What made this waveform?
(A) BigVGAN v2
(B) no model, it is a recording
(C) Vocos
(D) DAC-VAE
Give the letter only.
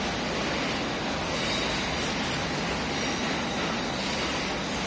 B